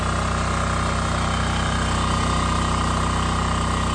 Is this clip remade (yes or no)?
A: no